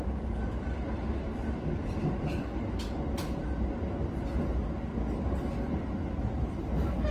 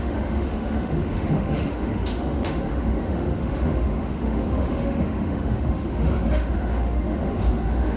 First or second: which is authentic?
first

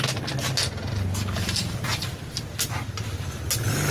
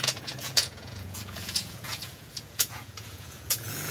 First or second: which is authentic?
first